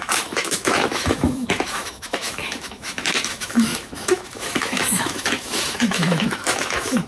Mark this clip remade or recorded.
remade